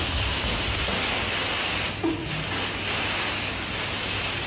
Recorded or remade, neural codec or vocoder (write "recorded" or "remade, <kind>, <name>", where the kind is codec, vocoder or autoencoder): recorded